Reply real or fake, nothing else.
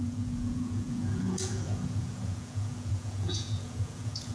fake